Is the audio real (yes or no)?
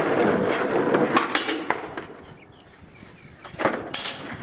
yes